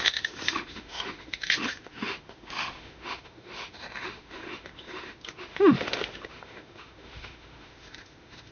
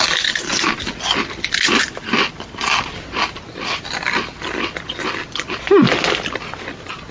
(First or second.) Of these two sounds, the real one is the second